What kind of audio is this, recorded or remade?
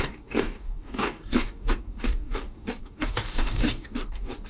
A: remade